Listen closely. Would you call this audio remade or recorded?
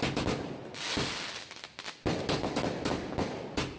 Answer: recorded